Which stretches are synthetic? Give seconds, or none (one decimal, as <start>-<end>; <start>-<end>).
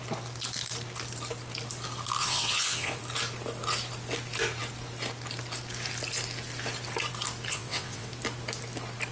2.2-3.0; 7.5-8.1